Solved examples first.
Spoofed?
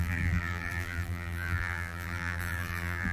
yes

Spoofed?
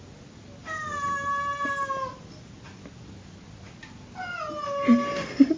no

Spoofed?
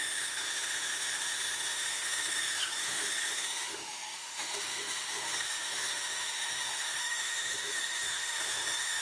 yes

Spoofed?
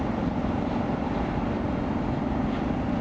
no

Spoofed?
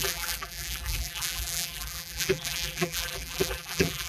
yes